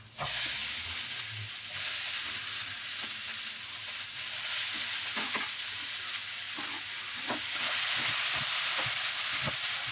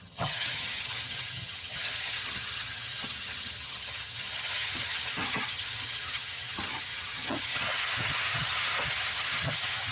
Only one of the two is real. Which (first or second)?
first